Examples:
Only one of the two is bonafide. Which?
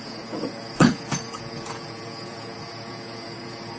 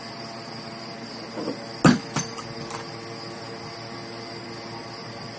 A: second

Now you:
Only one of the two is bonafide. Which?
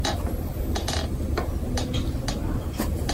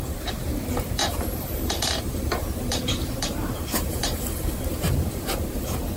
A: first